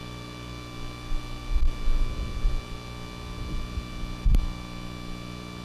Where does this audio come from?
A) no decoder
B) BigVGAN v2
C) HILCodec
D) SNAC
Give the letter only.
A